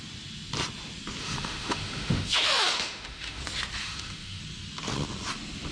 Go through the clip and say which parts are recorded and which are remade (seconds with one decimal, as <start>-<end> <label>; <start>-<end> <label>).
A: 0.0-1.2 recorded; 1.2-3.4 remade; 3.4-3.8 recorded; 3.8-4.4 remade; 4.4-5.7 recorded